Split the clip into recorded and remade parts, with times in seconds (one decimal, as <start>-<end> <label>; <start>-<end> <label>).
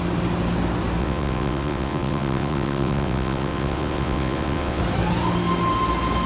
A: 0.0-1.0 recorded; 1.0-4.8 remade; 4.8-6.3 recorded